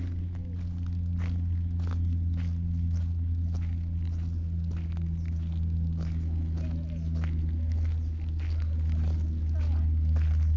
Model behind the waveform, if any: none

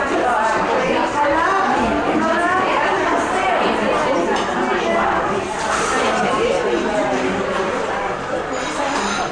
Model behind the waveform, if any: none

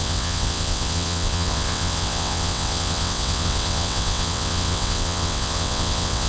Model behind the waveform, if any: vocoder, WaveNeXt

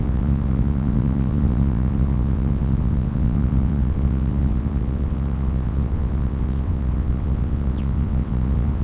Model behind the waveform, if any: vocoder, WaveNeXt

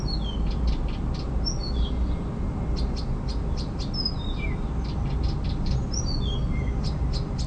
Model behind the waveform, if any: none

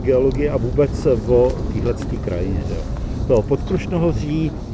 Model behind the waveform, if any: none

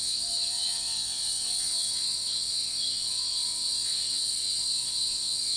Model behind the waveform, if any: vocoder, WaveNeXt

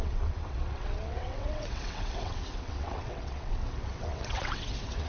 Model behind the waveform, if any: vocoder, WaveNeXt